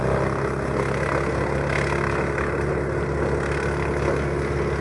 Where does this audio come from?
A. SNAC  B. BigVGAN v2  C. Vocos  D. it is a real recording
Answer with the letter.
D